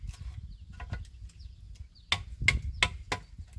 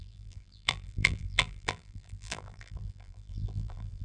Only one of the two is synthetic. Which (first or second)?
second